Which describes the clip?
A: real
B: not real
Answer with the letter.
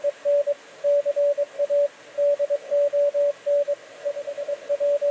A